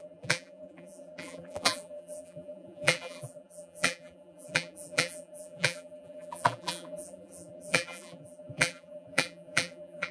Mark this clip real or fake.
fake